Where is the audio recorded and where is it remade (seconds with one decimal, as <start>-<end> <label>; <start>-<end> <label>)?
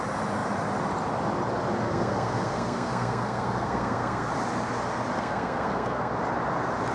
0.0-1.9 recorded; 1.9-4.3 remade; 4.3-5.1 recorded; 5.1-6.1 remade; 6.1-6.9 recorded